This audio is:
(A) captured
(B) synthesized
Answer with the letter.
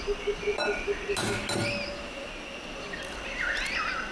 A